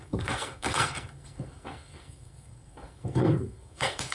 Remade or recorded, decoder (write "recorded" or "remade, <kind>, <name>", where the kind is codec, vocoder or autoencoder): remade, codec, SNAC